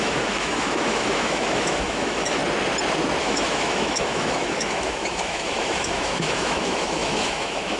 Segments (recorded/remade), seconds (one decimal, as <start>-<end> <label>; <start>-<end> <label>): 0.0-2.4 remade; 2.4-3.2 recorded; 3.2-7.8 remade